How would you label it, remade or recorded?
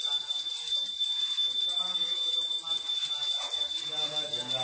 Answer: recorded